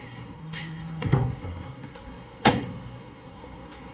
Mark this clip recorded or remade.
remade